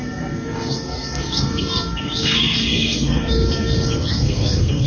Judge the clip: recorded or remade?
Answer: remade